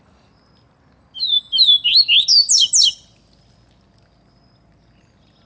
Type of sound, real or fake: real